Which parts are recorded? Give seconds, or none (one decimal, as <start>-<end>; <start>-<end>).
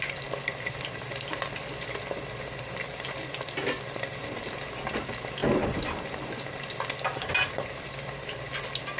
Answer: 0.0-9.0